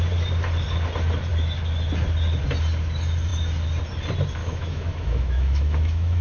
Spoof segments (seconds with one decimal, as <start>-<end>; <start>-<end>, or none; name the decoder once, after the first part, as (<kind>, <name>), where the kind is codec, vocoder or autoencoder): 4.4-6.2 (autoencoder, DAC-VAE)